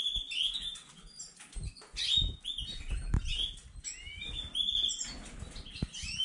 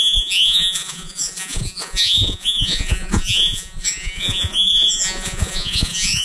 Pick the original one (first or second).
first